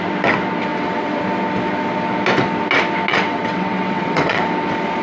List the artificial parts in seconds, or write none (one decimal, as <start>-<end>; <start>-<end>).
0.7-1.2; 3.1-4.4